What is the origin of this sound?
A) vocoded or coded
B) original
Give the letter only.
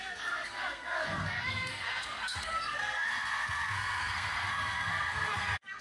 A